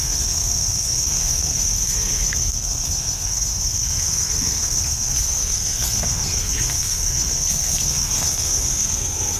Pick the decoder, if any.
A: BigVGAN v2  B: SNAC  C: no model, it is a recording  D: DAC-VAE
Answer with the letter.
B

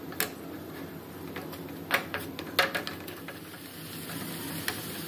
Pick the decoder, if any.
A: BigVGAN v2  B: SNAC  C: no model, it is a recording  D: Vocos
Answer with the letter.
C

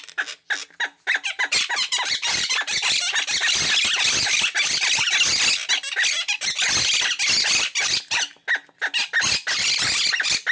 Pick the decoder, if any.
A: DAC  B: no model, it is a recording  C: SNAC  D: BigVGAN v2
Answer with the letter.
B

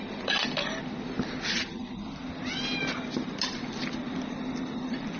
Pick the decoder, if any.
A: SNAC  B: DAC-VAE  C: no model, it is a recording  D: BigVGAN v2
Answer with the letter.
C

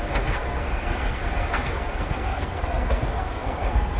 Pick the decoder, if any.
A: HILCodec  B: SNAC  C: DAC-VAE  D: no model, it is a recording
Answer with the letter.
B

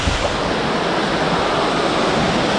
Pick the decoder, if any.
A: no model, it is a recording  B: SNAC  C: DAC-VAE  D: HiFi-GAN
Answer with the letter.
A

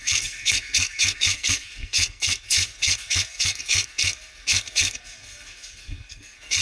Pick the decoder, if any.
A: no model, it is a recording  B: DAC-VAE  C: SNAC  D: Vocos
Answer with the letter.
C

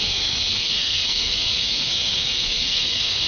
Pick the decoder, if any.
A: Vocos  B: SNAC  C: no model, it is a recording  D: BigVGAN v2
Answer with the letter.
B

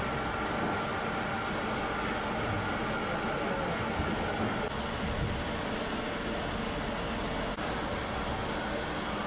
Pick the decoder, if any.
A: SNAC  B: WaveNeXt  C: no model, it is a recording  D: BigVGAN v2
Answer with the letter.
C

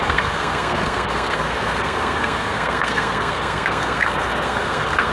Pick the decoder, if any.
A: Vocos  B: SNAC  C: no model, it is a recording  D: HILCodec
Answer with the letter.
B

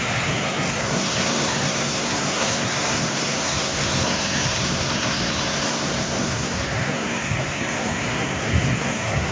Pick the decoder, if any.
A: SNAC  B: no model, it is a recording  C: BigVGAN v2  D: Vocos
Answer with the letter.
A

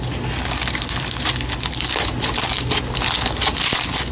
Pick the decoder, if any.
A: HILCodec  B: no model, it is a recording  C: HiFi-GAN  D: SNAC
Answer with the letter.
B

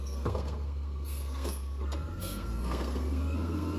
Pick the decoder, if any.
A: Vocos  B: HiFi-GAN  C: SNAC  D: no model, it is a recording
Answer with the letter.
C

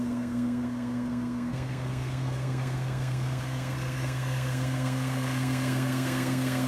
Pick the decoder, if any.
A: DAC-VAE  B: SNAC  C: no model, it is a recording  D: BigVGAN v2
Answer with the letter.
B